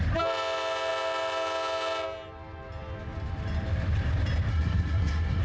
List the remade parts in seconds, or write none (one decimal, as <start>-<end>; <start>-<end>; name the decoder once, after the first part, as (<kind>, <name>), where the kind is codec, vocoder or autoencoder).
4.5-5.4 (codec, SNAC)